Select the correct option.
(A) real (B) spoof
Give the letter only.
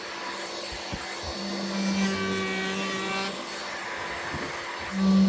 A